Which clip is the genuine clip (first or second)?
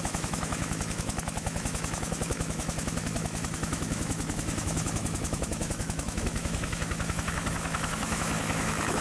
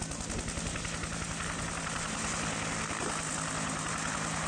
second